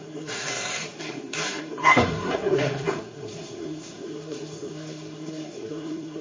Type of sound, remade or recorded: remade